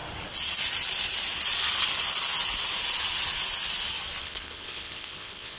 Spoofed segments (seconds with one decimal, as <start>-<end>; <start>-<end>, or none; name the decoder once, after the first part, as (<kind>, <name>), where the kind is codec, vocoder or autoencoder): 4.2-5.6 (codec, HILCodec)